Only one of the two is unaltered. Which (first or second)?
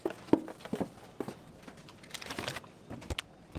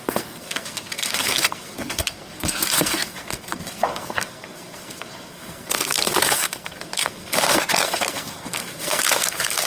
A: first